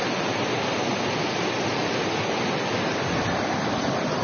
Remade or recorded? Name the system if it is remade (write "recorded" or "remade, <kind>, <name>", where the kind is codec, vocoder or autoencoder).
recorded